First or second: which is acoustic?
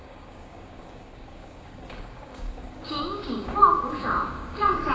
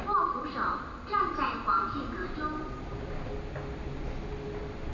second